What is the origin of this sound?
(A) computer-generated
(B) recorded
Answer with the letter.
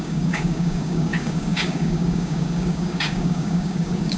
A